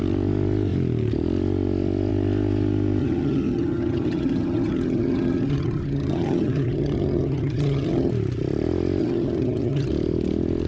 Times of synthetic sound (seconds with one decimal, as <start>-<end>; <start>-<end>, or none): 3.0-8.1; 9.0-9.9